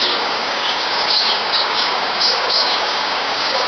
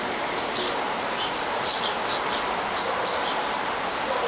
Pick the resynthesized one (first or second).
first